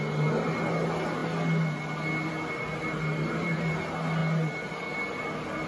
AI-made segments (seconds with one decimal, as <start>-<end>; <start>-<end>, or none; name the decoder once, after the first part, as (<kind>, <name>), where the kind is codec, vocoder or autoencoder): none